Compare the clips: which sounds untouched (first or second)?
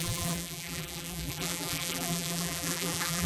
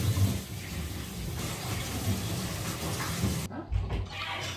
second